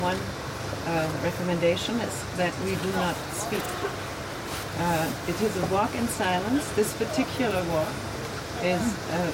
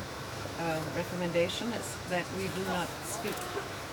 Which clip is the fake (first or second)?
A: second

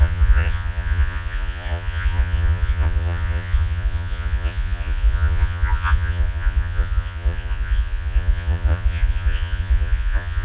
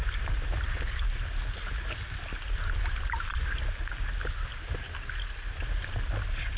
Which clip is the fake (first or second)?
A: first